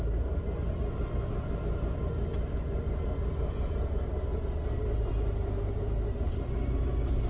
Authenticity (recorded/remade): recorded